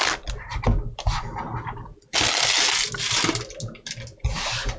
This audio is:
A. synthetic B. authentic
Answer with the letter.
B